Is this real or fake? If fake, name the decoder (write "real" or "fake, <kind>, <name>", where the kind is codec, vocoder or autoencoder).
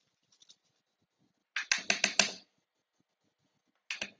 real